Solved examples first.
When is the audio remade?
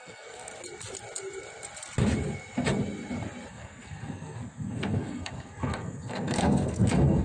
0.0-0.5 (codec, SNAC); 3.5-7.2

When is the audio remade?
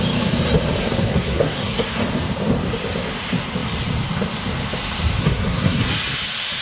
0.8-2.0 (codec, SNAC); 5.2-5.9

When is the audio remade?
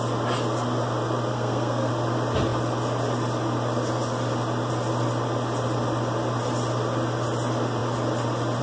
1.3-1.9 (codec, SNAC)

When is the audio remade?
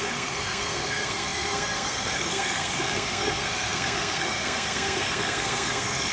0.0-6.1 (codec, SNAC)